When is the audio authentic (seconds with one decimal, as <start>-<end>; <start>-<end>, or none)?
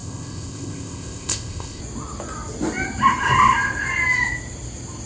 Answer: 1.8-5.1